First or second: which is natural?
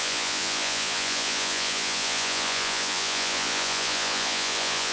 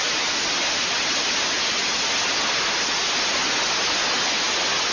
second